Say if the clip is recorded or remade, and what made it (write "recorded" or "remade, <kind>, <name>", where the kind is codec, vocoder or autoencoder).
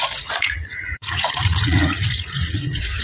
remade, vocoder, Vocos